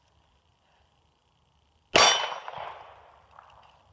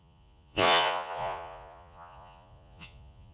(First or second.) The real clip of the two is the first